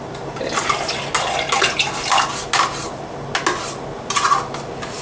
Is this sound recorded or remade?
recorded